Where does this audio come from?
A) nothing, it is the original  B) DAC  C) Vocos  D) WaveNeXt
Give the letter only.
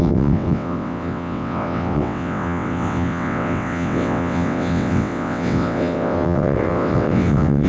D